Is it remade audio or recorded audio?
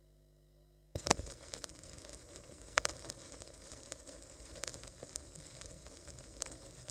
remade